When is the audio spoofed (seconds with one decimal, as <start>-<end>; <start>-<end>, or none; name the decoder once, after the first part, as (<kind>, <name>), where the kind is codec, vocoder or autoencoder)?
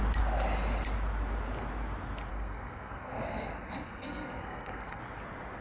2.3-5.0 (codec, SNAC)